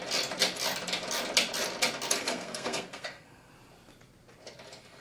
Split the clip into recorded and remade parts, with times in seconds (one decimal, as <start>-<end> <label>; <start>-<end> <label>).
0.0-2.2 recorded; 2.2-3.5 remade; 3.5-5.0 recorded